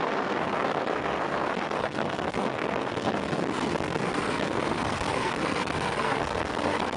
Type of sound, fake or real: fake